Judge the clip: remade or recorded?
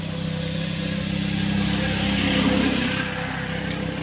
recorded